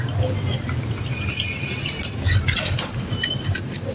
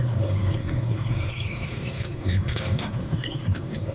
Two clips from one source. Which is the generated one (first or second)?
second